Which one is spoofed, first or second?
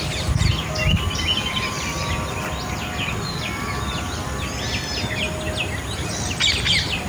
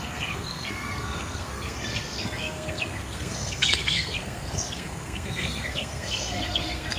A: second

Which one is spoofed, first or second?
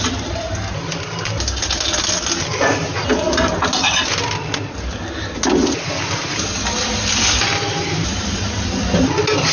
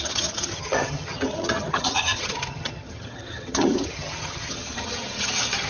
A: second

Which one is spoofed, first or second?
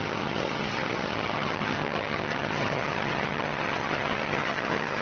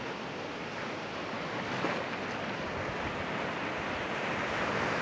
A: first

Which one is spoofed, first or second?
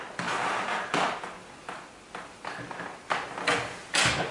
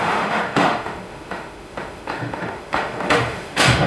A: second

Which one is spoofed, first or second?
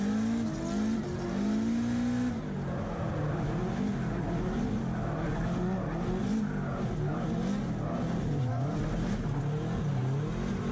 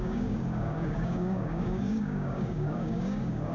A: second